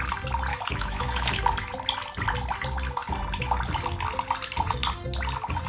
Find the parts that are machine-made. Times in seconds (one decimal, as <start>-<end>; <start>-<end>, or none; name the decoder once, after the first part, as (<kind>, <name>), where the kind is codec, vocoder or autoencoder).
0.5-1.4 (autoencoder, DAC-VAE)